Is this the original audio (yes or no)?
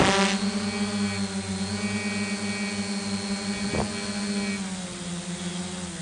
yes